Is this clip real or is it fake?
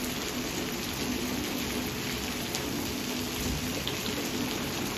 real